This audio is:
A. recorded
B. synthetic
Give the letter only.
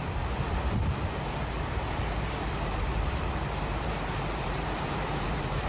B